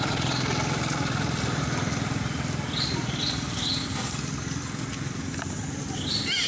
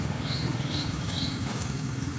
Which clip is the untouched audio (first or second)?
first